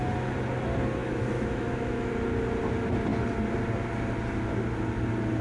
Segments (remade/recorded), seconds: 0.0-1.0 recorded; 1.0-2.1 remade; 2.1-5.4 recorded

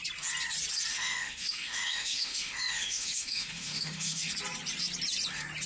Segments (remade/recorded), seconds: 0.0-0.9 recorded; 0.9-4.3 remade; 4.3-5.7 recorded

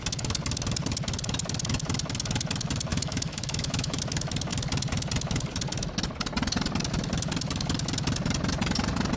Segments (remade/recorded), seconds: 0.0-2.9 recorded; 2.9-4.0 remade; 4.0-9.2 recorded

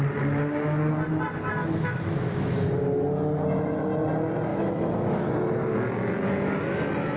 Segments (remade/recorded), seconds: 0.0-1.6 recorded; 1.6-2.7 remade; 2.7-4.5 recorded; 4.5-5.3 remade; 5.3-7.2 recorded

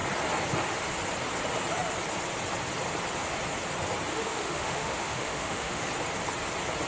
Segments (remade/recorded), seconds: 0.0-4.1 recorded; 4.1-5.8 remade; 5.8-6.9 recorded

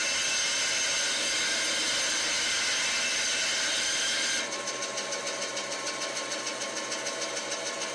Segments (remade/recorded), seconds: 0.0-7.9 recorded

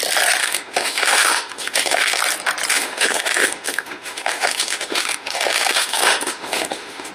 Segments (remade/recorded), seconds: 0.0-0.4 recorded; 0.4-2.2 remade; 2.2-2.7 recorded; 2.7-7.1 remade